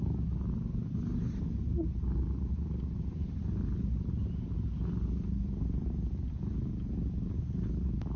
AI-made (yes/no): no